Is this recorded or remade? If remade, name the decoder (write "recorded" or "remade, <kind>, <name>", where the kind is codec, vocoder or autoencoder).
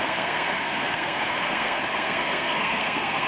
remade, codec, SNAC